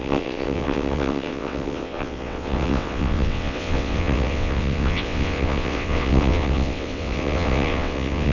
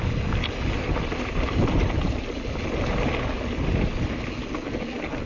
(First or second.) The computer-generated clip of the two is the first